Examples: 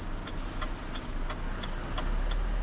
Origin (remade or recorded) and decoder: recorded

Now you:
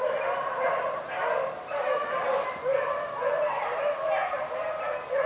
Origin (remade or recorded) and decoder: recorded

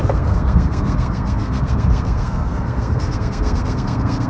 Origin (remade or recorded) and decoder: remade, codec, SNAC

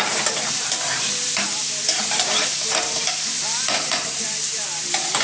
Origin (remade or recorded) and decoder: remade, vocoder, BigVGAN v2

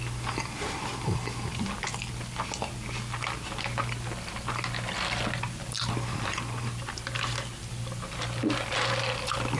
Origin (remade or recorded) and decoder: recorded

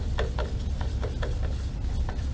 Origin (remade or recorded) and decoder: recorded